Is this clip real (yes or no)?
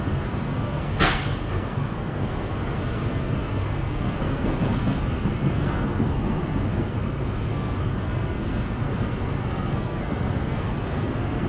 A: no